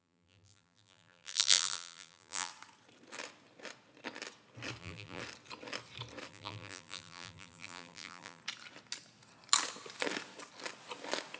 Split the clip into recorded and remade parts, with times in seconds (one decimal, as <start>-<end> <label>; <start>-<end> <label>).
0.0-2.5 remade; 2.5-4.8 recorded; 4.8-5.2 remade; 5.2-6.3 recorded; 6.3-8.4 remade; 8.4-11.4 recorded